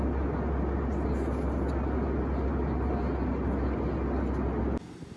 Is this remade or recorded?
recorded